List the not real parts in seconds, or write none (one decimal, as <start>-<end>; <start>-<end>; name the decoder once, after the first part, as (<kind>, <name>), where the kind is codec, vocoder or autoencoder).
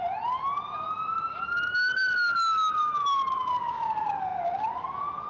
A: 2.8-3.9 (autoencoder, DAC-VAE)